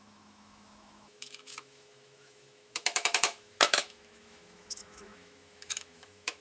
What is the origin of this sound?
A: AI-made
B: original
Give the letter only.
A